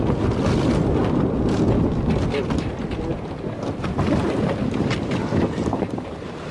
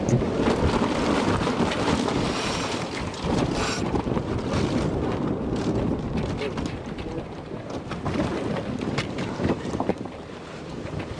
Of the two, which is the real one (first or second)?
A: first